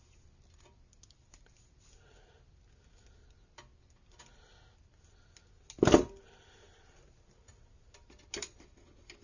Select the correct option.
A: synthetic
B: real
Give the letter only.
B